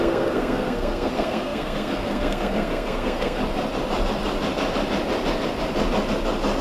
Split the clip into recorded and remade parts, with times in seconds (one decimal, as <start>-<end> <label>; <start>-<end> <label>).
0.0-3.4 remade; 3.4-6.6 recorded